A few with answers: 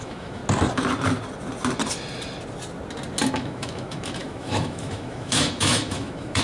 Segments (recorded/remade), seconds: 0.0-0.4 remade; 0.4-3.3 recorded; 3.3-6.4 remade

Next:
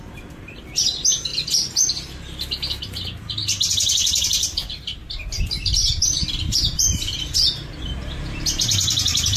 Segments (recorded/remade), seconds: 0.0-1.3 remade; 1.3-3.7 recorded; 3.7-9.4 remade

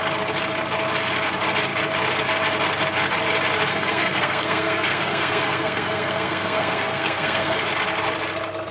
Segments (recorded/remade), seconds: 0.0-3.7 recorded; 3.7-7.6 remade; 7.6-8.7 recorded

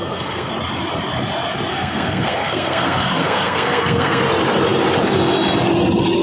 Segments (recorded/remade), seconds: 0.0-0.5 remade; 0.5-1.7 recorded; 1.7-4.2 remade; 4.2-6.2 recorded